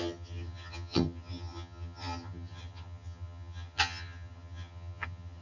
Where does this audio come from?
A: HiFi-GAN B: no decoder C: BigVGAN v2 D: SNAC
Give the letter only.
A